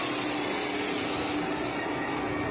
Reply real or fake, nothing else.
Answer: real